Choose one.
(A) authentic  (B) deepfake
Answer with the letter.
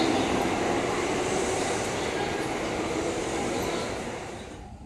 B